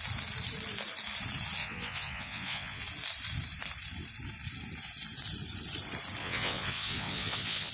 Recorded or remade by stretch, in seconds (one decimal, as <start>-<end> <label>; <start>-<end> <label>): 0.0-1.6 recorded; 1.6-2.8 remade; 2.8-6.2 recorded; 6.2-7.7 remade